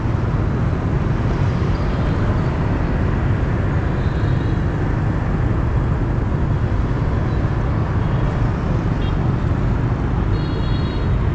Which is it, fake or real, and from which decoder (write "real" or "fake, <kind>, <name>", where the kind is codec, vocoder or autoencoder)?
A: real